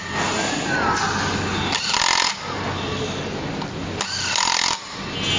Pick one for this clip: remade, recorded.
recorded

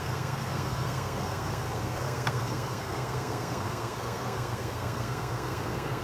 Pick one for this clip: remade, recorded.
remade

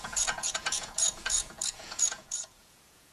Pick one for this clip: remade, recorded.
remade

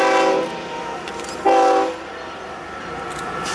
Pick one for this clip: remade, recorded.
recorded